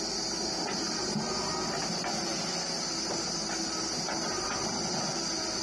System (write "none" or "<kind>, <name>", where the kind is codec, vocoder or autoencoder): none